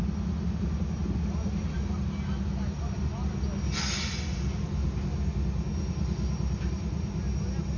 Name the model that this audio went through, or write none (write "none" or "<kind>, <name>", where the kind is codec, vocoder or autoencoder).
none